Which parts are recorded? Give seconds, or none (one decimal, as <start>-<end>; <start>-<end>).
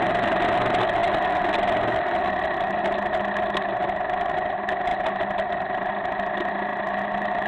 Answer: 0.0-7.5